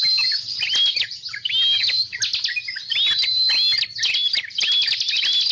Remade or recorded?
recorded